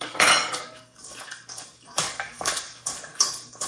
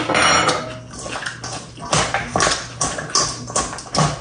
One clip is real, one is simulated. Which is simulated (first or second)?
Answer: first